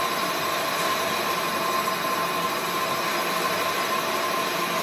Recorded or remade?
recorded